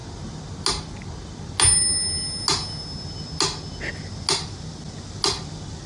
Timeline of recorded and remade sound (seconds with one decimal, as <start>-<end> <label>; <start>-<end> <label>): 0.0-5.9 recorded

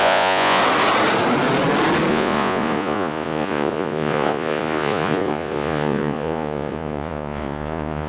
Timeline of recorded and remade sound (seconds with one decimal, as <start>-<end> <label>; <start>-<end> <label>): 0.0-0.6 remade; 0.6-2.1 recorded; 2.1-8.1 remade

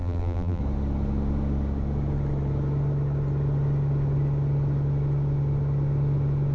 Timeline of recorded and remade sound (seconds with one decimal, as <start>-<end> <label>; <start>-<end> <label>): 0.0-0.6 remade; 0.6-6.5 recorded

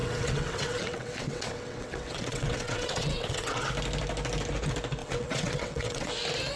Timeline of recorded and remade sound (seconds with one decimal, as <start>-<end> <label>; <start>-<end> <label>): 0.0-3.7 remade; 3.7-5.0 recorded; 5.0-6.1 remade; 6.1-6.6 recorded

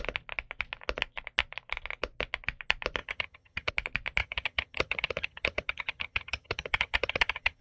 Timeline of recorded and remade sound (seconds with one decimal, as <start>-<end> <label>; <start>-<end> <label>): 0.0-3.0 recorded; 3.0-3.7 remade; 3.7-4.2 recorded; 4.2-7.6 remade

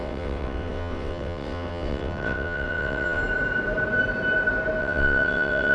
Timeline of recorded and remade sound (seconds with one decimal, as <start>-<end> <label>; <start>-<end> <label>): 0.0-3.2 remade; 3.2-4.8 recorded; 4.8-5.7 remade